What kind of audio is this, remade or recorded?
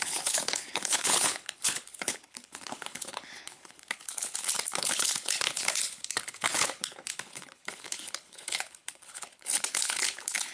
remade